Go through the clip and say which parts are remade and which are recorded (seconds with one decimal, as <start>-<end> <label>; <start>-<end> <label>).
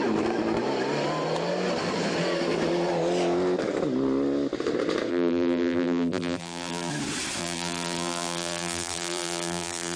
0.0-5.1 recorded; 5.1-6.9 remade; 6.9-7.4 recorded; 7.4-10.0 remade